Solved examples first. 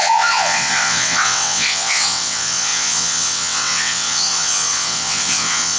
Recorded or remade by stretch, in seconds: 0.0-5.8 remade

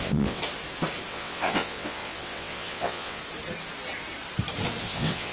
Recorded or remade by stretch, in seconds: 0.0-0.4 remade; 0.4-1.1 recorded; 1.1-3.2 remade; 3.2-4.8 recorded; 4.8-5.3 remade